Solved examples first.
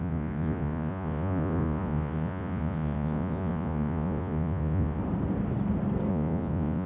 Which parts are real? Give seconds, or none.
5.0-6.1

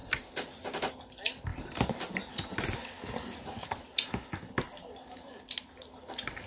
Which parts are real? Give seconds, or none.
0.0-6.5